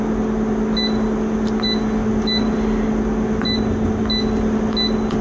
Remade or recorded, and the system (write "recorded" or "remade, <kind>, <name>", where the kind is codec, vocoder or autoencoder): recorded